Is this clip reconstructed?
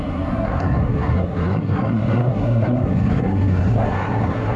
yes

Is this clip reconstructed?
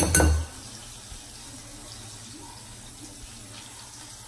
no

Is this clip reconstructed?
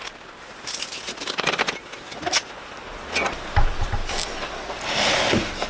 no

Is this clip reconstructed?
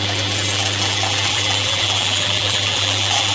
yes